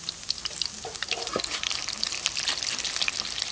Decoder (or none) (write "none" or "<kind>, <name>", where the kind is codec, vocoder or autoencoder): none